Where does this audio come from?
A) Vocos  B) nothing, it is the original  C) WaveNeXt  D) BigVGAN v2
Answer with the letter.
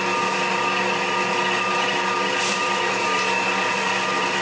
B